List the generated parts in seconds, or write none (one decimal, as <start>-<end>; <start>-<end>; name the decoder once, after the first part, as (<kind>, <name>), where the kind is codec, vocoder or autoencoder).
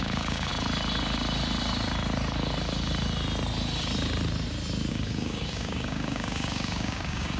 0.0-0.5 (codec, DAC); 4.9-7.4